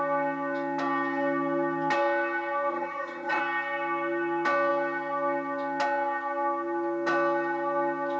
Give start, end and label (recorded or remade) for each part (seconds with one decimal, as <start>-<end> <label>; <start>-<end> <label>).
0.0-2.7 recorded; 2.7-3.4 remade; 3.4-8.2 recorded